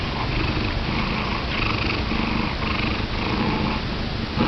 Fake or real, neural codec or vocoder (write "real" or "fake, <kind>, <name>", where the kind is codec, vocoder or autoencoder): real